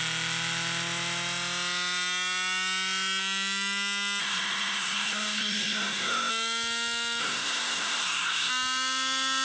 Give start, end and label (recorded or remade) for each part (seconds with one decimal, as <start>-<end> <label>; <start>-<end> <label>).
0.0-4.2 recorded; 4.2-6.3 remade; 6.3-7.2 recorded; 7.2-8.5 remade; 8.5-9.4 recorded